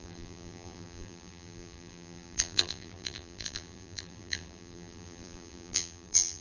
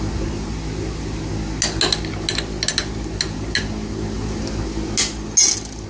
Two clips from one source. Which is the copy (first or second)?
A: first